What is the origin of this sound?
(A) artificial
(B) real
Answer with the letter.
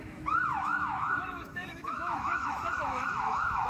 A